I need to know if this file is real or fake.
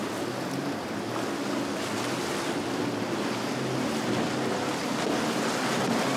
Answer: real